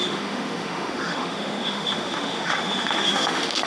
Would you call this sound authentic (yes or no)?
no